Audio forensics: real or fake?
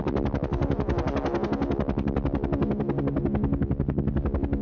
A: real